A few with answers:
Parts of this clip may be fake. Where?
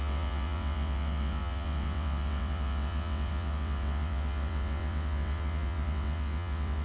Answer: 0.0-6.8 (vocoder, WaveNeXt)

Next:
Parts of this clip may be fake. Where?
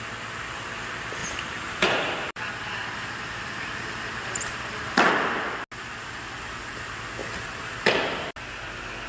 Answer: 1.2-5.1 (vocoder, BigVGAN v2)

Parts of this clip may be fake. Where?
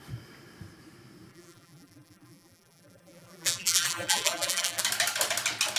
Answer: 1.3-4.8 (vocoder, BigVGAN v2)